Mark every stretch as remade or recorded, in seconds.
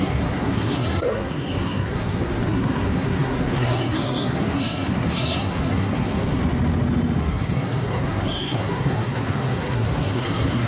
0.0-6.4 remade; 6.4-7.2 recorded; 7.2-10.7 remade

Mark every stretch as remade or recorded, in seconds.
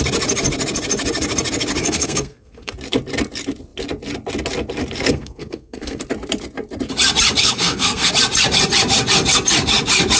0.0-1.8 recorded; 1.8-2.7 remade; 2.7-5.1 recorded; 5.1-6.0 remade; 6.0-7.4 recorded; 7.4-8.1 remade; 8.1-10.2 recorded